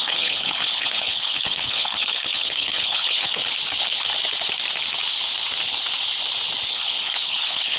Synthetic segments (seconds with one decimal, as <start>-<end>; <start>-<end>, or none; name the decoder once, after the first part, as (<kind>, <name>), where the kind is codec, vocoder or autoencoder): 0.0-3.4 (codec, HILCodec); 6.7-7.8

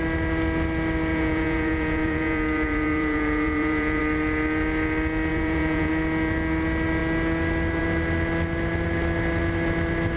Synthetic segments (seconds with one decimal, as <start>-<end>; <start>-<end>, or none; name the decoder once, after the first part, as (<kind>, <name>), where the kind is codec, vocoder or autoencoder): 1.1-4.0 (vocoder, Vocos); 5.3-5.9